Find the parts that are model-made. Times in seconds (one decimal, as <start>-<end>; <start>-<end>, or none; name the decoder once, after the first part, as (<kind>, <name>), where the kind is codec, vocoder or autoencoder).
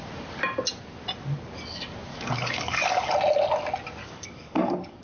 2.1-3.1 (codec, DAC); 4.0-5.0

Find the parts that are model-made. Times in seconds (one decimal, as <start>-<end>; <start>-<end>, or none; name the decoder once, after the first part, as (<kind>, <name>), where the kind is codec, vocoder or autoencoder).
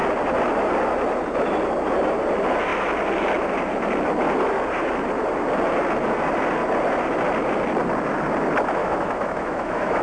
8.8-10.0 (autoencoder, DAC-VAE)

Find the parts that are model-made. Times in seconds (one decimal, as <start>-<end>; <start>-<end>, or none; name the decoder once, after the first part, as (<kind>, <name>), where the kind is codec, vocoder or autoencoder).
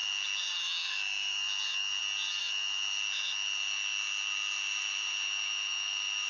0.0-2.0 (autoencoder, DAC-VAE); 2.4-6.3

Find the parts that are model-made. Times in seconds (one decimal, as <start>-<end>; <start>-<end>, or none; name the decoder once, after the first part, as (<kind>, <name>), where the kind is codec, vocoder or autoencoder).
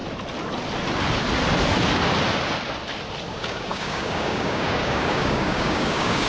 3.3-6.3 (codec, DAC)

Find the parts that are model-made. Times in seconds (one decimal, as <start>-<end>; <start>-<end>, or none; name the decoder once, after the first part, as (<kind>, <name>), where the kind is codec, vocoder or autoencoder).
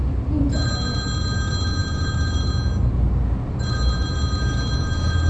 none